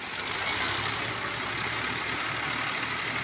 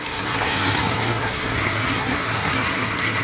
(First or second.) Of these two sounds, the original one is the first